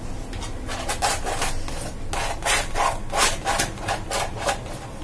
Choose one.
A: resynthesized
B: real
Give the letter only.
B